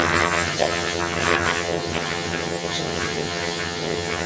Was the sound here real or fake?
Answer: fake